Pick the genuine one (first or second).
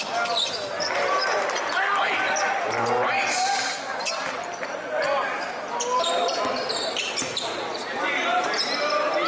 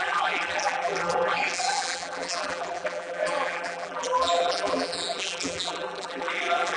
first